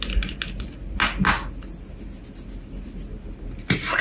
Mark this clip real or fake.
real